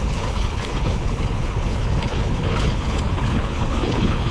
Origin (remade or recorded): remade